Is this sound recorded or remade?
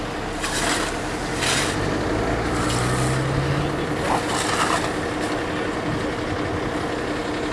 recorded